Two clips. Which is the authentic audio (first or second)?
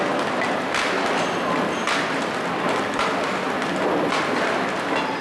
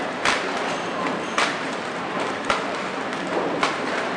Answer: first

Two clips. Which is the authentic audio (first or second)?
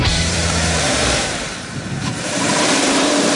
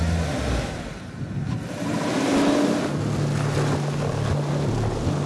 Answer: second